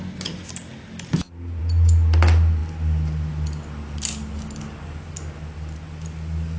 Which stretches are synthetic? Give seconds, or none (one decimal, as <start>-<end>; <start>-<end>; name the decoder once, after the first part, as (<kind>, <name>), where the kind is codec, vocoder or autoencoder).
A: none